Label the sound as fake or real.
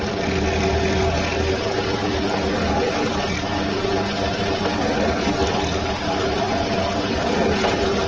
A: real